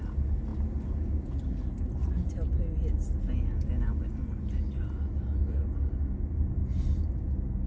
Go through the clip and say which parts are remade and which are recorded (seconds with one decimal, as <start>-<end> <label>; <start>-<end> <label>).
0.0-7.7 recorded